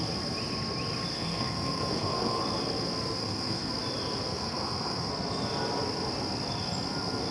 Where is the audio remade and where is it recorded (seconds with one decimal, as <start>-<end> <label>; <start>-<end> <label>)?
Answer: 0.0-1.1 recorded; 1.1-2.4 remade; 2.4-3.2 recorded; 3.2-3.7 remade; 3.7-4.3 recorded; 4.3-5.1 remade; 5.1-7.3 recorded